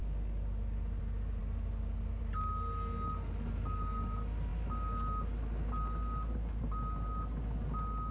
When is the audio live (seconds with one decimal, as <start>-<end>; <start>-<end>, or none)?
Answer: 0.0-8.1